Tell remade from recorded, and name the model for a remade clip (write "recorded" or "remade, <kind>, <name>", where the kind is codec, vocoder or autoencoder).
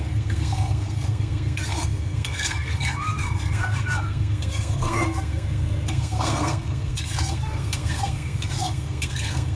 remade, codec, SNAC